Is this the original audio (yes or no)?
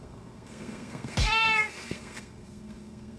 no